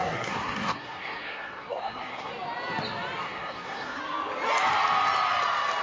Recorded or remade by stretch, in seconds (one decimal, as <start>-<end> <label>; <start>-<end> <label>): 0.0-2.3 remade; 2.3-3.2 recorded; 3.2-4.0 remade; 4.0-5.8 recorded